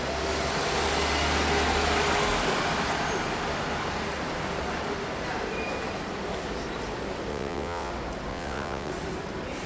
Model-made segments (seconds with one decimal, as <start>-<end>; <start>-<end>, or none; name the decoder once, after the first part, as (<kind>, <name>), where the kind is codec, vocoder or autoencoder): 7.3-7.9 (vocoder, WaveNeXt); 8.3-8.9